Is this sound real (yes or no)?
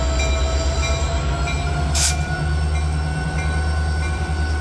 yes